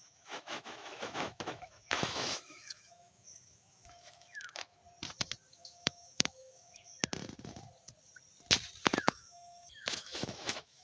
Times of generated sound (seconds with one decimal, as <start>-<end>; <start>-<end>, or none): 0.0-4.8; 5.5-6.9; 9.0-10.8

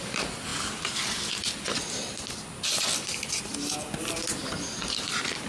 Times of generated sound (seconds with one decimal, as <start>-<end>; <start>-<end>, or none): none

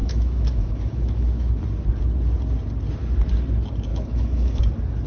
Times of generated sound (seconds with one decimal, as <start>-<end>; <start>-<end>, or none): 0.0-1.6; 3.9-4.6

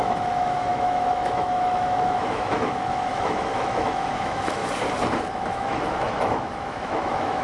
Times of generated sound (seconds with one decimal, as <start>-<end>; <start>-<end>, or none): 0.0-4.6; 5.3-7.4